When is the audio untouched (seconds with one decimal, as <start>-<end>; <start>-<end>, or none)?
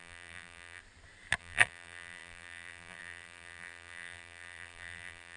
0.8-1.4